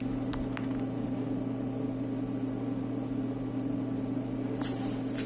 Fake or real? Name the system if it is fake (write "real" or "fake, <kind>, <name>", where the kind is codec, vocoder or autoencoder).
real